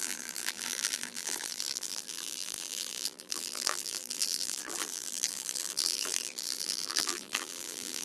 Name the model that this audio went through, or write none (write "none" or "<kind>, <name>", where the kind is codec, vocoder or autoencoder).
vocoder, BigVGAN v2